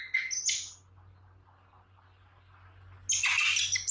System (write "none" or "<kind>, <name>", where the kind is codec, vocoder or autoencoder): none